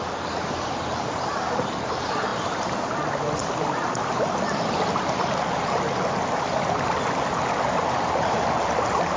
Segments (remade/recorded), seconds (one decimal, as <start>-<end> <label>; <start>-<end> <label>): 0.0-9.2 recorded